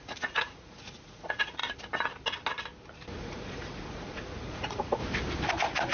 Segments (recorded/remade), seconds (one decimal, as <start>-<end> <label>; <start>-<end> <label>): 0.0-1.6 remade; 1.6-3.2 recorded; 3.2-5.0 remade; 5.0-5.5 recorded; 5.5-5.9 remade